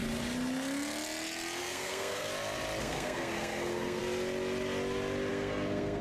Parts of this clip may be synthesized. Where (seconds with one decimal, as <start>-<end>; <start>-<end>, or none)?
1.6-2.3; 2.8-4.0; 5.3-6.0